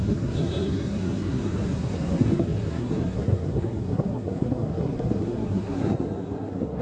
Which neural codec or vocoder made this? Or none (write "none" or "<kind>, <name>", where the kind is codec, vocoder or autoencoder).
codec, SNAC